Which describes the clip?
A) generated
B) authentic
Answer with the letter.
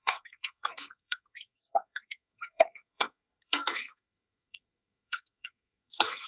A